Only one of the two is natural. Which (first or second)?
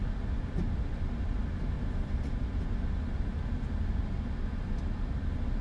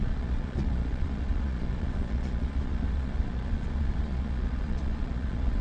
first